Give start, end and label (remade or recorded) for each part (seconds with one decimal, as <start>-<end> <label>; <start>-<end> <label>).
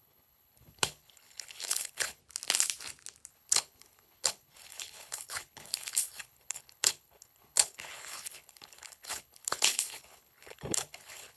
0.0-2.2 remade; 2.2-3.3 recorded; 3.3-11.4 remade